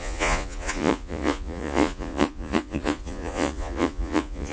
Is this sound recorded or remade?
remade